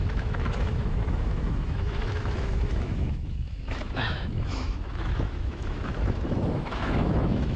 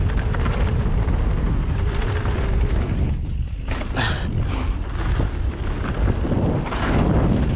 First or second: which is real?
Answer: second